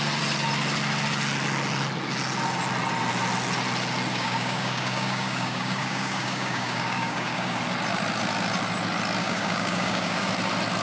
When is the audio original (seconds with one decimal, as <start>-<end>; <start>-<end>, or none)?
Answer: 0.0-4.1; 7.6-9.2; 10.3-10.8